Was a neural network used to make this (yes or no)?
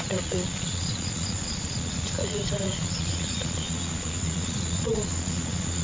yes